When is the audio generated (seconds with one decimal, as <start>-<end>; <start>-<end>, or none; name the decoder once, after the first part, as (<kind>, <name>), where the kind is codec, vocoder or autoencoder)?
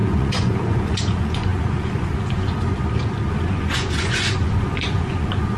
0.0-2.7 (vocoder, Vocos); 3.3-5.6